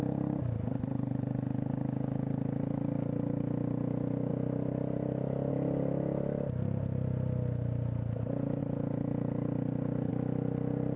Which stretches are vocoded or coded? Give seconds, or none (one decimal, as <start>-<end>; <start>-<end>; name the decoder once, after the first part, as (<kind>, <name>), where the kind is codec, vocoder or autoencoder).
none